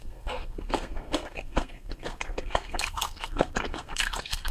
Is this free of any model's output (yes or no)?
no